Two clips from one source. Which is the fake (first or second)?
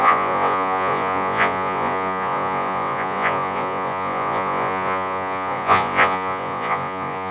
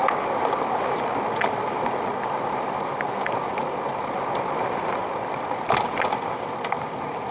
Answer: first